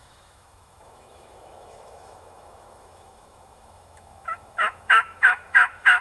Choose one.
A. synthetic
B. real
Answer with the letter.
A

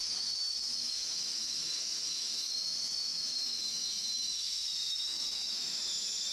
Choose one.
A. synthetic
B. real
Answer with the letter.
A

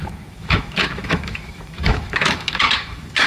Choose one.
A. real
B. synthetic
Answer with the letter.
B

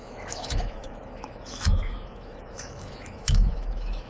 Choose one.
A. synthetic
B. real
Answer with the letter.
A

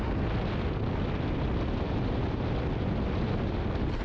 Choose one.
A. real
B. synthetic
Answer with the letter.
A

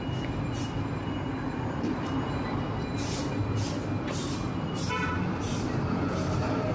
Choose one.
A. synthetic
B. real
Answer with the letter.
B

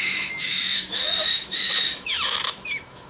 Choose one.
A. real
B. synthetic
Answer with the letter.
B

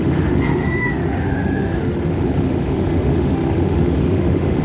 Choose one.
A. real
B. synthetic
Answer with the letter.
B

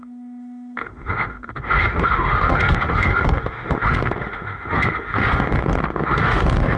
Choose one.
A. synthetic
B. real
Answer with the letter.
A